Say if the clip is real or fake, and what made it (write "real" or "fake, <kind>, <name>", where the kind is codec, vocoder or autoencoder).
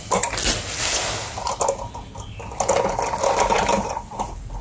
real